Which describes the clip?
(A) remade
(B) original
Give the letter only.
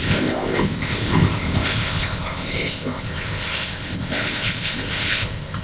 A